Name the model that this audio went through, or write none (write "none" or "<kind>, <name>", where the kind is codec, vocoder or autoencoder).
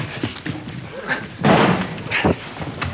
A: none